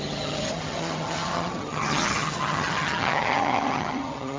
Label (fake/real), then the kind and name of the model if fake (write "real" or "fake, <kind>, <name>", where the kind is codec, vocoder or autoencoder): fake, vocoder, HiFi-GAN